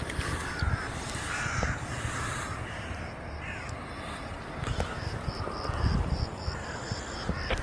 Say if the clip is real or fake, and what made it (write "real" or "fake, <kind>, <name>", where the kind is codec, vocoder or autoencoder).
real